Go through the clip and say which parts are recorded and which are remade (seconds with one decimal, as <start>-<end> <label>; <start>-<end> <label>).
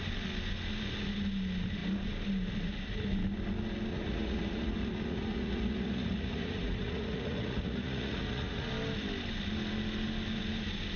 0.0-3.9 recorded; 3.9-8.7 remade; 8.7-11.0 recorded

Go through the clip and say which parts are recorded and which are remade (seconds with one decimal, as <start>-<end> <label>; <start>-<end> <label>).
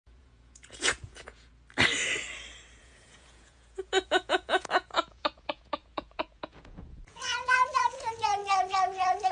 0.0-1.5 remade; 1.5-2.8 recorded; 2.8-8.4 remade; 8.4-9.3 recorded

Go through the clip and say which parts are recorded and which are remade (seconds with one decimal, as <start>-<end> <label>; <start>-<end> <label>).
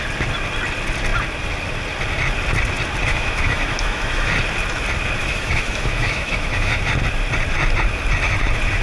0.0-3.1 recorded; 3.1-4.3 remade; 4.3-5.2 recorded; 5.2-6.9 remade; 6.9-8.8 recorded